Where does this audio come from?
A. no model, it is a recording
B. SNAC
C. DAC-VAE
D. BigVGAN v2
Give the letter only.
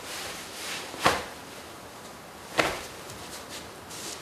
A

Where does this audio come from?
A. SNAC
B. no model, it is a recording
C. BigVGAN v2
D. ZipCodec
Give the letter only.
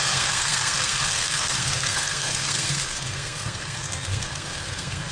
A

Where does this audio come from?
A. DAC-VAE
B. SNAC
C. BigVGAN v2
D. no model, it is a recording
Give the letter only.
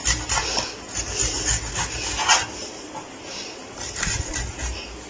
D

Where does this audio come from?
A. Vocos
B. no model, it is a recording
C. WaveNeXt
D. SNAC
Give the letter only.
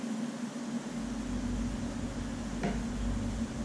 B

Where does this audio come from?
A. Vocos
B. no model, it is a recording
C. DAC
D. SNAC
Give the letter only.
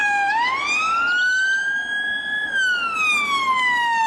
B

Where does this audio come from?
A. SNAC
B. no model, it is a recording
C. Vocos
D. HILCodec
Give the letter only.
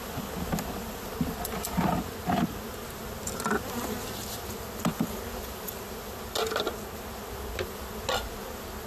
B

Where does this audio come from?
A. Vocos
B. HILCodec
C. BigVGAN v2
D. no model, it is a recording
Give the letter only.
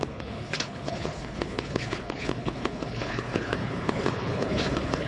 B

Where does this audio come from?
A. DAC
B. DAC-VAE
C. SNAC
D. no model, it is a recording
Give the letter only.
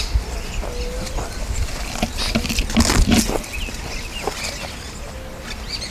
D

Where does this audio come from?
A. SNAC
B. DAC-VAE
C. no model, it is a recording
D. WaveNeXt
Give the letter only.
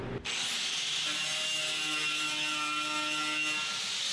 C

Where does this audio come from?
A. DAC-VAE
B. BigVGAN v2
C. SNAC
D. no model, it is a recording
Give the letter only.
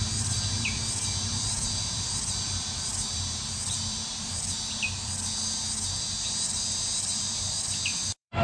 B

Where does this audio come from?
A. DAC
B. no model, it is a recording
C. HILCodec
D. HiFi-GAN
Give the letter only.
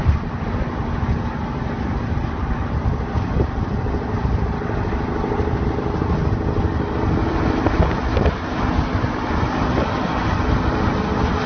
B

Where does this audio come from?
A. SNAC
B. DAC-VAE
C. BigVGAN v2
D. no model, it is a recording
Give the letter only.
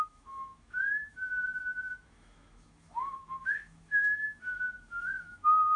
B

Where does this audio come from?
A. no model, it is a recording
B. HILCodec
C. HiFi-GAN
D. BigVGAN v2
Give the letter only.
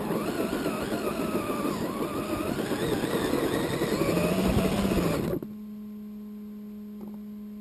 A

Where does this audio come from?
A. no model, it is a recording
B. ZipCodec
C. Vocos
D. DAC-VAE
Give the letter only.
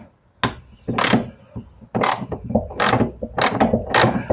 A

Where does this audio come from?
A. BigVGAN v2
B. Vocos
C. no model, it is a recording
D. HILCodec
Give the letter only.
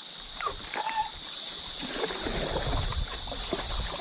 C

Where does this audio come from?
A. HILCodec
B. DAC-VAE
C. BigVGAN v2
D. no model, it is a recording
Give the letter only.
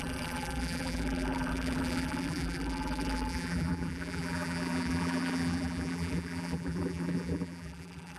C